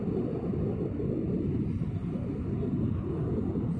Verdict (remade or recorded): recorded